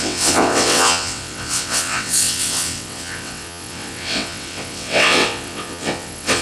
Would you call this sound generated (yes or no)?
yes